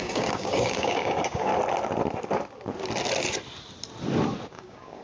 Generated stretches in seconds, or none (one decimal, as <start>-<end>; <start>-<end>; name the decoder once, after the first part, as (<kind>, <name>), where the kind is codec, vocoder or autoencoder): 0.0-1.5 (codec, DAC); 4.5-5.0